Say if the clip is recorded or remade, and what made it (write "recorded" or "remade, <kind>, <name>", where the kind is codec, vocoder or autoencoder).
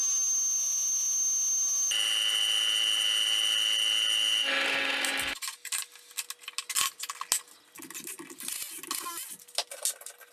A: recorded